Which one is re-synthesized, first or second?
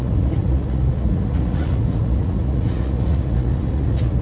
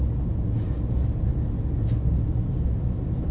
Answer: first